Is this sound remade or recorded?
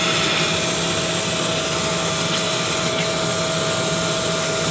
recorded